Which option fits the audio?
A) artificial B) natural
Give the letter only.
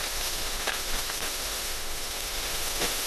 A